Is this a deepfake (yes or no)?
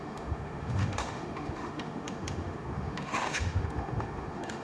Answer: yes